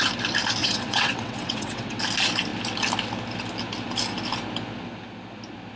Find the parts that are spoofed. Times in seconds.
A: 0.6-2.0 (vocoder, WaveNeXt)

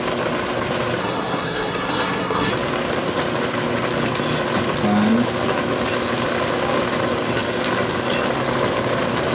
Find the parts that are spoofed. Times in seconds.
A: 1.0-2.5 (codec, SNAC)

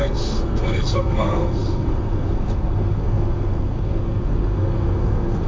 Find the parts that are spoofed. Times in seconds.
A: 0.0-5.5 (codec, SNAC)

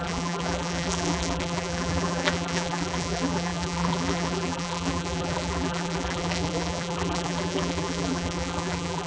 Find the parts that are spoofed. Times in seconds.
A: 0.0-9.1 (vocoder, BigVGAN v2)